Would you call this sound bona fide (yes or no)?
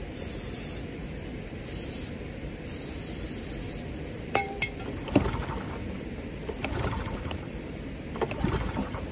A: yes